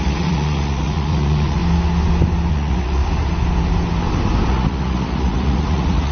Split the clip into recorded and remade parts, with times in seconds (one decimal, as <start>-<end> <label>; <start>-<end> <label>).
0.0-1.6 remade; 1.6-2.5 recorded; 2.5-3.0 remade; 3.0-4.5 recorded; 4.5-6.1 remade